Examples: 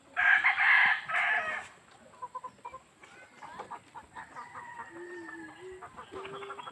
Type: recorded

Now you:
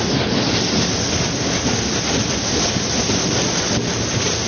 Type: recorded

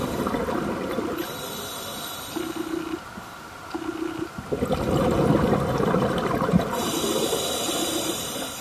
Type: recorded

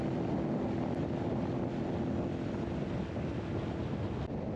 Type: recorded